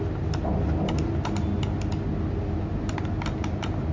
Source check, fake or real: real